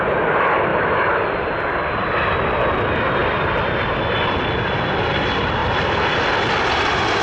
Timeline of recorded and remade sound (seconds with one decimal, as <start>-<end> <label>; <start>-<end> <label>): 0.0-0.7 recorded; 0.7-1.5 remade; 1.5-3.2 recorded; 3.2-3.7 remade; 3.7-5.6 recorded; 5.6-6.3 remade; 6.3-7.2 recorded

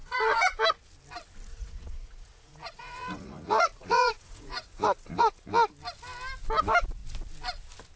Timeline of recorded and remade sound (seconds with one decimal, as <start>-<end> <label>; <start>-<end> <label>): 0.0-0.6 remade; 0.6-1.5 recorded; 1.5-5.5 remade; 5.5-8.0 recorded

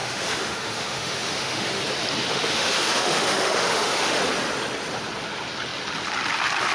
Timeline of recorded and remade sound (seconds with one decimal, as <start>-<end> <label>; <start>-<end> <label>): 0.0-1.8 remade; 1.8-2.3 recorded; 2.3-4.2 remade; 4.2-6.7 recorded

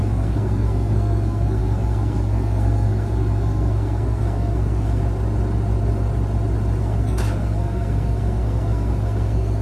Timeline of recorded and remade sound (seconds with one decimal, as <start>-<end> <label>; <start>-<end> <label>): 0.0-5.0 remade; 5.0-6.8 recorded; 6.8-9.6 remade

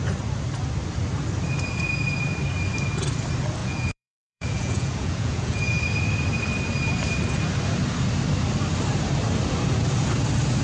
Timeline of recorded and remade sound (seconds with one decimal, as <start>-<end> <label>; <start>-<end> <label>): 0.0-3.6 recorded; 3.6-5.8 remade; 5.8-10.6 recorded

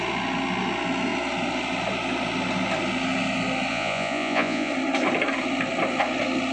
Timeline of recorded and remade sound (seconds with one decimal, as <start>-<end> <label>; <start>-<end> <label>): 0.0-3.7 recorded; 3.7-4.7 remade; 4.7-6.5 recorded